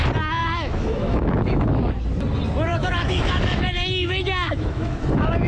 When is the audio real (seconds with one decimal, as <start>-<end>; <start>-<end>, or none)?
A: 0.0-0.4; 1.9-2.7